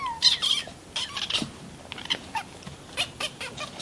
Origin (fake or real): real